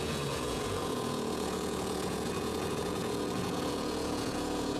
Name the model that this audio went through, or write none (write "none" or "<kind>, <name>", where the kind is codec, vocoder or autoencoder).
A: vocoder, Vocos